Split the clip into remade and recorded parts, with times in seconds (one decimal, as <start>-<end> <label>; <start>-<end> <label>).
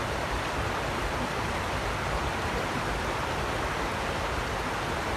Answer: 0.0-3.9 remade; 3.9-5.2 recorded